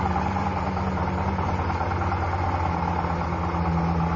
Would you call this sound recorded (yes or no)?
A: yes